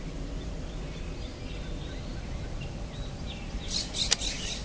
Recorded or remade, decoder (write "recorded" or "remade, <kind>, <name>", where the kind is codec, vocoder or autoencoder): recorded